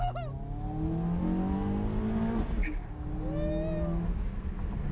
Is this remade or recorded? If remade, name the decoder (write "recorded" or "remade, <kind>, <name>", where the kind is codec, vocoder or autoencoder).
recorded